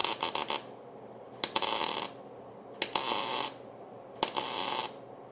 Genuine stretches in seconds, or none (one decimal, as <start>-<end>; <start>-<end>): 0.0-5.3